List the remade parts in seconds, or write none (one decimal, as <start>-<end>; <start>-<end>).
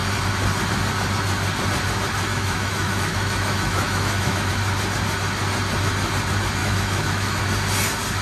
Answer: 2.3-4.5; 6.6-7.4